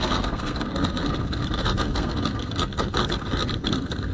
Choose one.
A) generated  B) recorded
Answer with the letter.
A